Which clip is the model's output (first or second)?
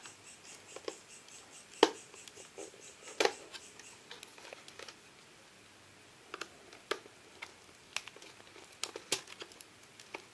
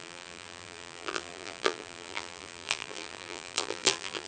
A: second